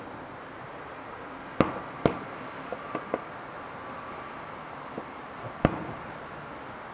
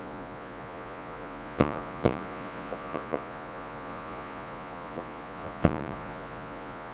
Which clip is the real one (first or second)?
first